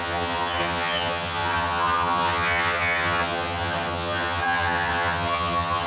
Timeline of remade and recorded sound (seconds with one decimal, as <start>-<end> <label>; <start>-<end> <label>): 0.0-5.9 remade